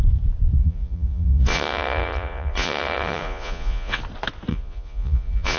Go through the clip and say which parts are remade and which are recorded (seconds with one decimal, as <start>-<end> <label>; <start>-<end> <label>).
0.0-0.6 recorded; 0.6-4.0 remade; 4.0-4.5 recorded; 4.5-5.6 remade

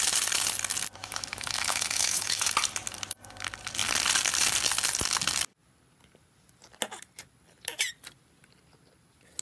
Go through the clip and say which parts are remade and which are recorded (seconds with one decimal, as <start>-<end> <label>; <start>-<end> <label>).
0.0-1.0 recorded; 1.0-2.5 remade; 2.5-9.4 recorded

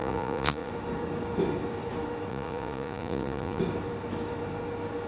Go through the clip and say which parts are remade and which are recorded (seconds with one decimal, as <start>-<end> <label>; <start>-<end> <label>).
0.0-0.7 remade; 0.7-2.3 recorded; 2.3-3.6 remade; 3.6-5.1 recorded